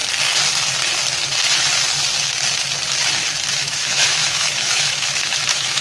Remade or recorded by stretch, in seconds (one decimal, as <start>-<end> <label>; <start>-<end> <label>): 0.0-3.5 recorded; 3.5-5.8 remade